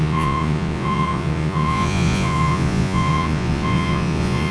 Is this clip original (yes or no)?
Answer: no